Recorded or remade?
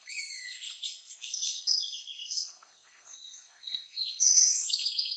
remade